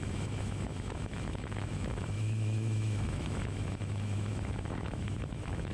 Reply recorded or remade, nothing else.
remade